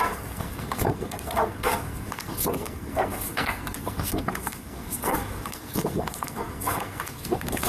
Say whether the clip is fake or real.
fake